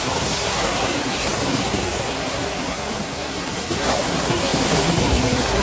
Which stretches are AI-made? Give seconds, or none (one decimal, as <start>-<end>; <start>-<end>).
0.0-5.6